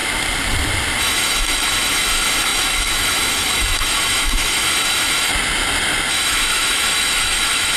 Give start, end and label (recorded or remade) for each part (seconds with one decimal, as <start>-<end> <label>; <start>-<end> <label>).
0.0-1.0 recorded; 1.0-5.3 remade; 5.3-6.1 recorded; 6.1-7.8 remade